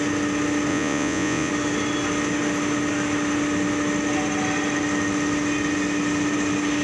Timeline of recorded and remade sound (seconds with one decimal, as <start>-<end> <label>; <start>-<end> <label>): 0.0-0.7 recorded; 0.7-1.5 remade; 1.5-6.8 recorded